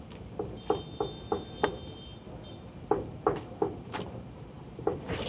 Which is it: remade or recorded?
recorded